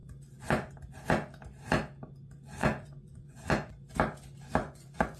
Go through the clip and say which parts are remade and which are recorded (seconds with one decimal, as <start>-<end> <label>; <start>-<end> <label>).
0.0-0.7 remade; 0.7-2.6 recorded; 2.6-3.7 remade; 3.7-4.6 recorded; 4.6-5.2 remade